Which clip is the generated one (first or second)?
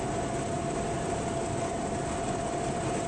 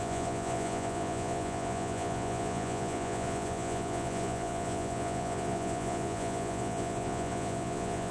second